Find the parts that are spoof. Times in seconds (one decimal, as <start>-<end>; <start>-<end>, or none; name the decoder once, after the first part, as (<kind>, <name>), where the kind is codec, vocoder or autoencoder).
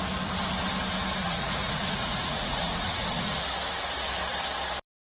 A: 1.2-3.4 (vocoder, Vocos)